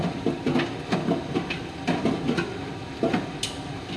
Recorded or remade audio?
recorded